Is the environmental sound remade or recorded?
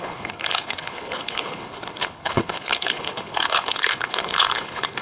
remade